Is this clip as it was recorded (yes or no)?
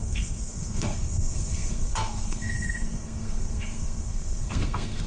no